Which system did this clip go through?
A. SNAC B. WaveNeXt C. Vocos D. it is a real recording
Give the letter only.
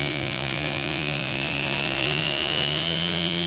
C